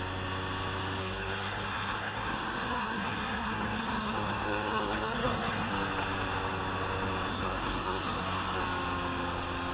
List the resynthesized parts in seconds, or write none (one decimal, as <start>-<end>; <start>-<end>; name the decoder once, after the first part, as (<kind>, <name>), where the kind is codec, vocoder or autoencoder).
1.0-5.7 (codec, SNAC); 7.3-8.6